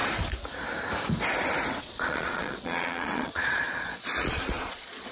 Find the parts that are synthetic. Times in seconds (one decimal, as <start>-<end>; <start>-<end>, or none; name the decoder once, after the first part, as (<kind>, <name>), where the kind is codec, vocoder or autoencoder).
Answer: 1.8-5.1 (vocoder, Vocos)